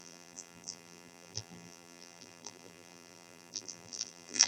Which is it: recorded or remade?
remade